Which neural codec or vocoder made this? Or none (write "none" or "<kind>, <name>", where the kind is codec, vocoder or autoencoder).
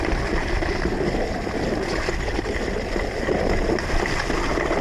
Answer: none